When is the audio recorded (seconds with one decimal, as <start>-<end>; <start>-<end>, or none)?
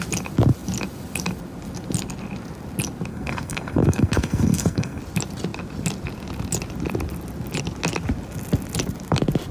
0.0-3.1; 5.0-9.5